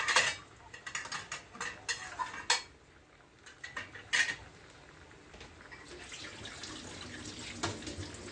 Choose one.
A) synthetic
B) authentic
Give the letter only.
B